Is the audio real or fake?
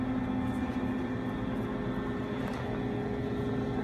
real